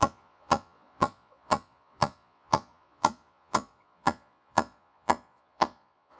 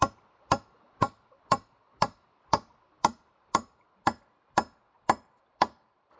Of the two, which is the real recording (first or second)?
second